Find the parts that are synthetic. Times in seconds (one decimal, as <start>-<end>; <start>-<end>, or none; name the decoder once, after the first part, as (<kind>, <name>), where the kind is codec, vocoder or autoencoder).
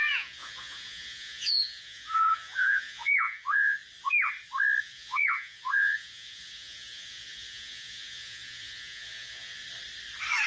0.0-3.8 (vocoder, Vocos); 4.8-9.6